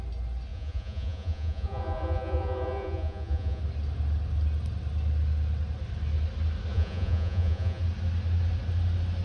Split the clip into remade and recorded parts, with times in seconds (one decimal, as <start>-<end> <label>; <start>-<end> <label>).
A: 0.0-0.5 recorded; 0.5-3.6 remade; 3.6-6.7 recorded; 6.7-7.8 remade; 7.8-9.2 recorded